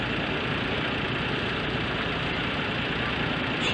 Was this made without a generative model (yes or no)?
yes